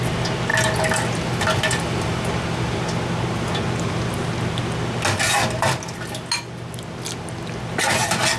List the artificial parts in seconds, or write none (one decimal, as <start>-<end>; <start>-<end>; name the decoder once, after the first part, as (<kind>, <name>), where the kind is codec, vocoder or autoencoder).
none